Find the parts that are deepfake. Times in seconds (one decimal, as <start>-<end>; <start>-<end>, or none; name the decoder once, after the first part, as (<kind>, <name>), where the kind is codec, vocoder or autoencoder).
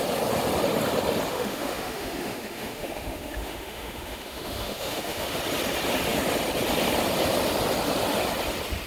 1.3-5.4 (autoencoder, DAC-VAE)